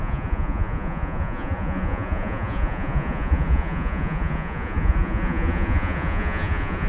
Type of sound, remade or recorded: remade